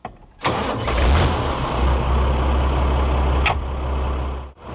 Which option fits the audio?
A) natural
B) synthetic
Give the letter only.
A